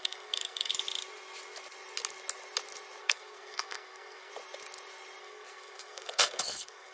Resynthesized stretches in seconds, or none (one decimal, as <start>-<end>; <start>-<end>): 0.0-0.7; 3.0-4.3; 5.2-6.9